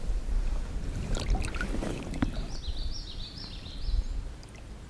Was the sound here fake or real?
real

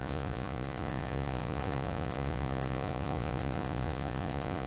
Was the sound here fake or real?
fake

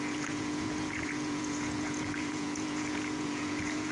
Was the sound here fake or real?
fake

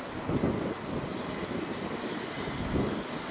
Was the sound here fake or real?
real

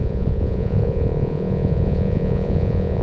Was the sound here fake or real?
fake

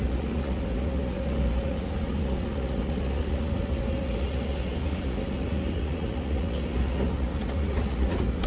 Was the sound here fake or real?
fake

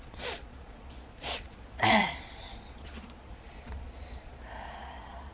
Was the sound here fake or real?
fake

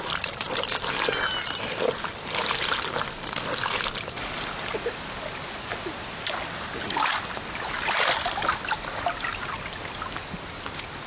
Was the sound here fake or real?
real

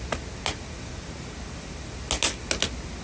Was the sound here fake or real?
real